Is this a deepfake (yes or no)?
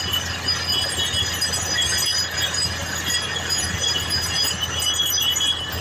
no